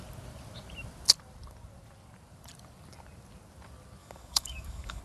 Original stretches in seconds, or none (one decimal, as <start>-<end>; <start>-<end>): 0.0-4.0